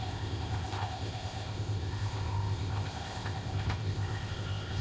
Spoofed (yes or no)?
yes